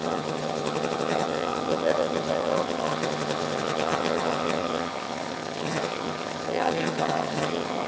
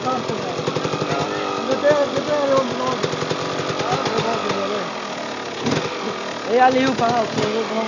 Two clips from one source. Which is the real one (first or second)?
second